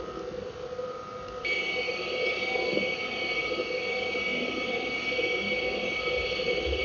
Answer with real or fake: real